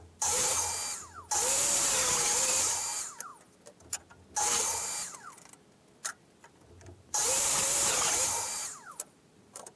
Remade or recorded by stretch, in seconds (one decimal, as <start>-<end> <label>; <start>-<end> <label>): 0.0-0.5 remade; 0.5-1.5 recorded; 1.5-3.3 remade; 3.3-6.7 recorded; 6.7-9.8 remade

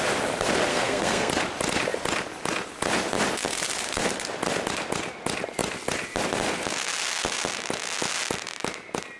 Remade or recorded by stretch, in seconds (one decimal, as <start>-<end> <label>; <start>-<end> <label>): 0.0-0.7 recorded; 0.7-1.3 remade; 1.3-9.2 recorded